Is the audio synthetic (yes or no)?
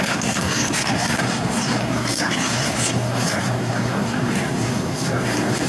yes